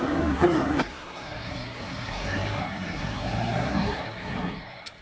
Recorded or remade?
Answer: remade